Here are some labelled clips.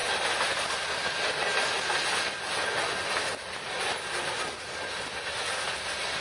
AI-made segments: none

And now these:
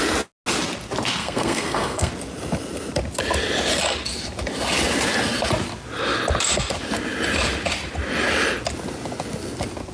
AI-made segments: 1.2-2.1 (codec, SNAC)

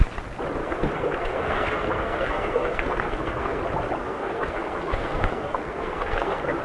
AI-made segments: 0.6-3.6 (codec, SNAC); 4.0-6.6

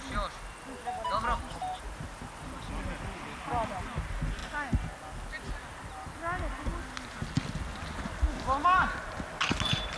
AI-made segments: none

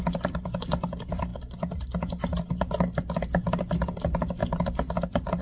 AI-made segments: none